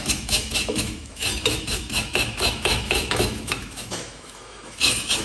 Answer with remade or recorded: remade